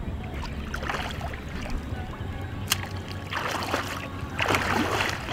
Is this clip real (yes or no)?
yes